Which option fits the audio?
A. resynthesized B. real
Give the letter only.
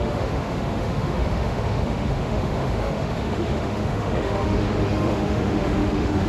A